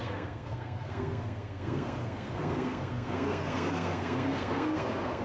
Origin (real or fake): fake